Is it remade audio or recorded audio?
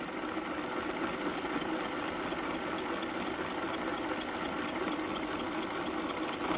recorded